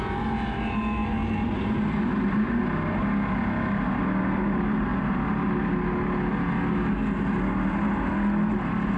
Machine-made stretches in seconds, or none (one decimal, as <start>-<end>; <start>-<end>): none